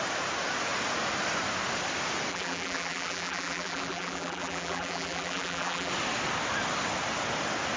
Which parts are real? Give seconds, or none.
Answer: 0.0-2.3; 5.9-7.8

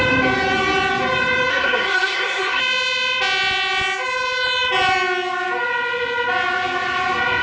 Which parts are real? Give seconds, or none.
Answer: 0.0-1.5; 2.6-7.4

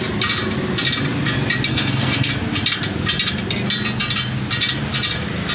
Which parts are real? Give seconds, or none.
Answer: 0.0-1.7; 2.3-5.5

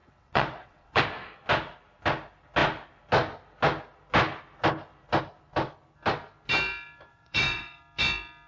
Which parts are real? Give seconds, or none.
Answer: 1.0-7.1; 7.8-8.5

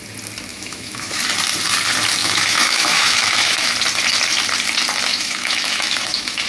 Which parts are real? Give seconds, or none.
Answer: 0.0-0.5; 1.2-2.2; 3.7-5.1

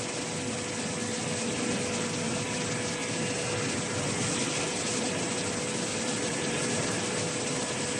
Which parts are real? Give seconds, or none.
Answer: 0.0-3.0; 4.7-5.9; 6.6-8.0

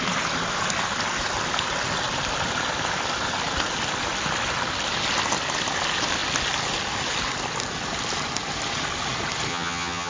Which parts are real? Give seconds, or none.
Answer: 0.0-9.5

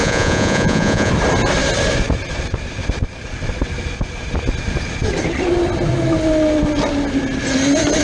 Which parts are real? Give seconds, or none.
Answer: 1.1-8.0